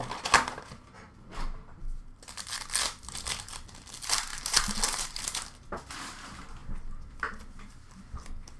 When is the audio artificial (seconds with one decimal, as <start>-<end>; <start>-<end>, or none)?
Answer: 4.3-5.2

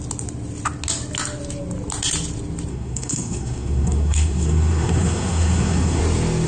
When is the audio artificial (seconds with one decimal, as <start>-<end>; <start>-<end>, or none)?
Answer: 2.7-6.0

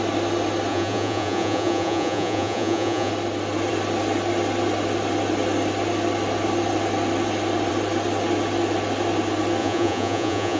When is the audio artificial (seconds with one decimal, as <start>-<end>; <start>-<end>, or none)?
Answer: 0.7-3.1; 9.6-10.6

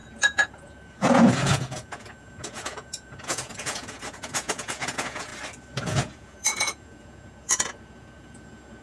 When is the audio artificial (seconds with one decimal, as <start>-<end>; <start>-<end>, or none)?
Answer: 0.0-5.3; 5.8-8.8

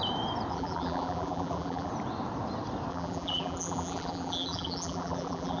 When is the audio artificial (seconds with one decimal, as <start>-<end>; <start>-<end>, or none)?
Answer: 0.5-1.9; 2.9-5.6

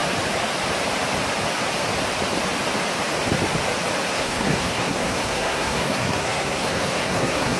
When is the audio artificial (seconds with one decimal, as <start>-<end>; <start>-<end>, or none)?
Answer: 4.1-7.6

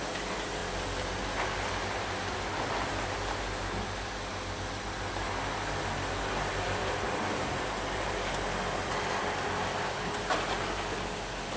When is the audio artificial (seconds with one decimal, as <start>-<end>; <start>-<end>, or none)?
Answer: none

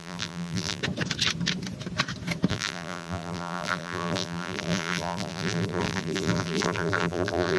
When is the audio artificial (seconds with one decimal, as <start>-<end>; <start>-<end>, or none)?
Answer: 0.0-0.8; 2.5-7.6